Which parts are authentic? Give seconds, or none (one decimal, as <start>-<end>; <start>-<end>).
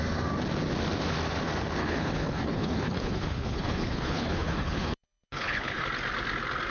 0.0-1.8; 5.8-6.7